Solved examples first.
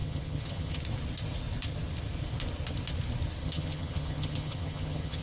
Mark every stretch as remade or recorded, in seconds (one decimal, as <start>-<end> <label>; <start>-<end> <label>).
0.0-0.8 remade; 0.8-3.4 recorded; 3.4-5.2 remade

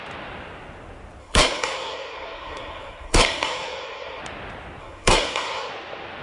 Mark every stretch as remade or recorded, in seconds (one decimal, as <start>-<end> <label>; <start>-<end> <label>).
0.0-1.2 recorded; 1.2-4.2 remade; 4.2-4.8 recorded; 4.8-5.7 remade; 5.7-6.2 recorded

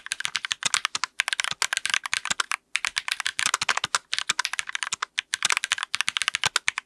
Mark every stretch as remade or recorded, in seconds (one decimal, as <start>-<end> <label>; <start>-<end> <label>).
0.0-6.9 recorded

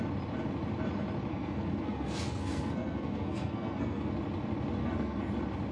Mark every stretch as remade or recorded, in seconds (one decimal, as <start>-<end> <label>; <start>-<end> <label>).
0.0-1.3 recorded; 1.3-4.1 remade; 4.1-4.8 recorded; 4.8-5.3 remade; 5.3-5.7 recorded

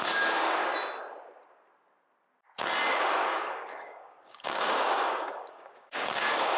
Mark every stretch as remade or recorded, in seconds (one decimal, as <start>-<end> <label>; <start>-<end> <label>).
0.0-0.7 remade; 0.7-2.9 recorded; 2.9-6.6 remade